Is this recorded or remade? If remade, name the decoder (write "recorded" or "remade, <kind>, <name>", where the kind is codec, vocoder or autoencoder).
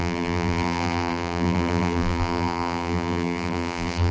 remade, vocoder, BigVGAN v2